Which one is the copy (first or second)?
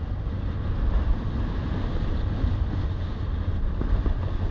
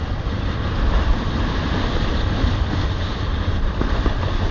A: second